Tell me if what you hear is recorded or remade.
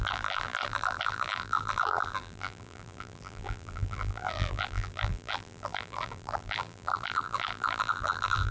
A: remade